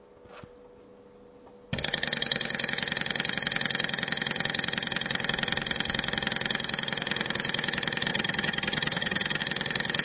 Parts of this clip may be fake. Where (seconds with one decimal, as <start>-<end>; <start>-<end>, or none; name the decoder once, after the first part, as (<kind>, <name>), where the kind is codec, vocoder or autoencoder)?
8.1-9.4 (vocoder, HiFi-GAN)

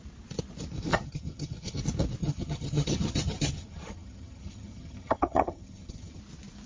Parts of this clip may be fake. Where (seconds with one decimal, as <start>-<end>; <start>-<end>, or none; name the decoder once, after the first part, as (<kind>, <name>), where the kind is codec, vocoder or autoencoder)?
0.9-1.8 (vocoder, HiFi-GAN); 2.2-6.2

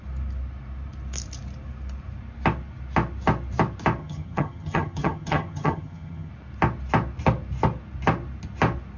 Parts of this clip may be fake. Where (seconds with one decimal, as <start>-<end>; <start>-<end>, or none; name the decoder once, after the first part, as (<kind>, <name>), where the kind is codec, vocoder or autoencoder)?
4.0-6.3 (vocoder, HiFi-GAN)